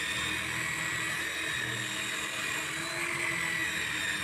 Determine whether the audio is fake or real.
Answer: real